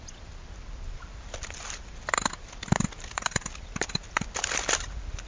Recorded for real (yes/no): yes